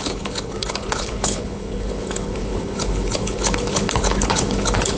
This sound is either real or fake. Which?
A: fake